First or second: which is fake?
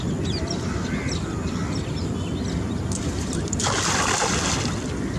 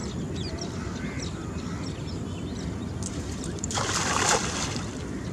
second